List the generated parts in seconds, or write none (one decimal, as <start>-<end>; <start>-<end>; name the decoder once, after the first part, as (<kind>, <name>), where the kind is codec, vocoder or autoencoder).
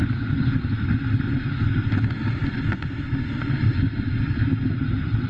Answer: none